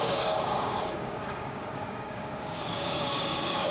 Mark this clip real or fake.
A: fake